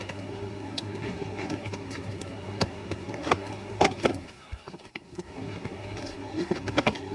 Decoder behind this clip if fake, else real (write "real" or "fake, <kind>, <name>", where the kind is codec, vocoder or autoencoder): fake, codec, SNAC